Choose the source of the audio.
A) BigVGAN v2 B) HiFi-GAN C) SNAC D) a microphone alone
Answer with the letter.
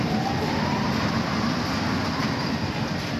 D